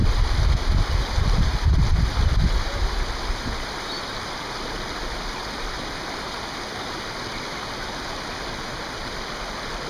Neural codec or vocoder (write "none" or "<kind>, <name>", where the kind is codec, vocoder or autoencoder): none